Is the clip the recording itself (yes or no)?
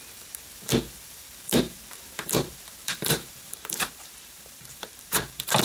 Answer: no